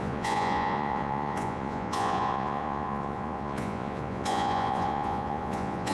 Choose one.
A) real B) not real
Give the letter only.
B